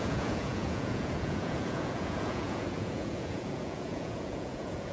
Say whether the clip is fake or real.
fake